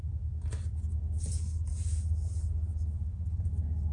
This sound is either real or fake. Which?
real